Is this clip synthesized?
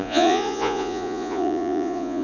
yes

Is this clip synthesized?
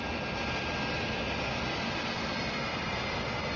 no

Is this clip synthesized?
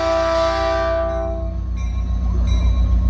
no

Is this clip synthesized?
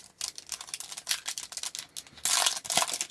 no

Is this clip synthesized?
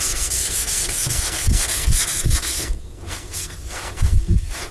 yes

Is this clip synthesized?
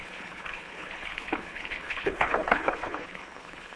yes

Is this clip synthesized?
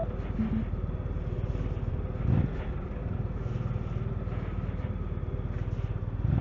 no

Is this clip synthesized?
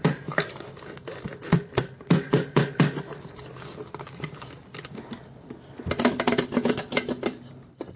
no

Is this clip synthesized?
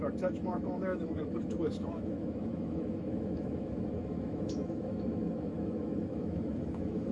yes